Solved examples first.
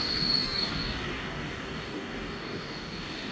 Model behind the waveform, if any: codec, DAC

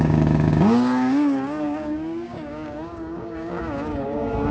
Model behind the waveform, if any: codec, DAC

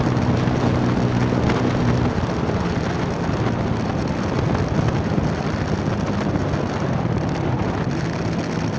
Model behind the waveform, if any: none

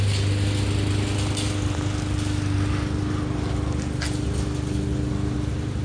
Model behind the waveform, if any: none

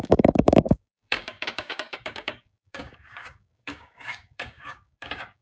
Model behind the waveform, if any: codec, DAC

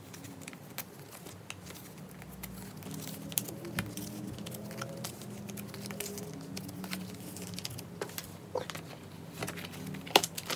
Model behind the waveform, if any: none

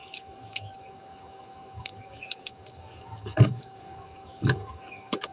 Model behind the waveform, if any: codec, DAC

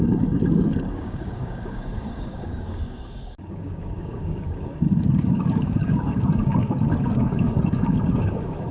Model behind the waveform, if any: codec, DAC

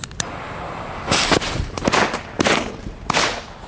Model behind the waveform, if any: none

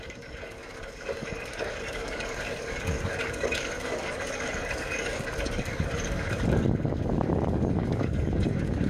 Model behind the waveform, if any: codec, DAC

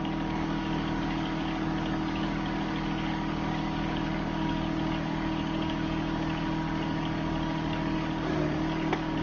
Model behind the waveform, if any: codec, DAC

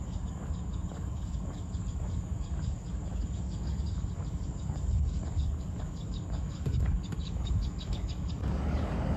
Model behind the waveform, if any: codec, DAC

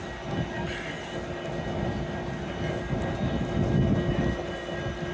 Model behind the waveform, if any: none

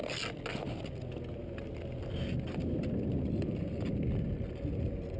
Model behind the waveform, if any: none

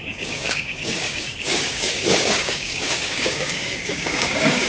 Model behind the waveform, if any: codec, DAC